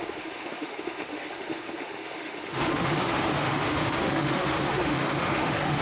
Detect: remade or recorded remade